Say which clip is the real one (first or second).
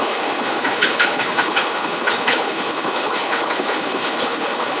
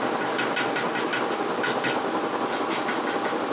second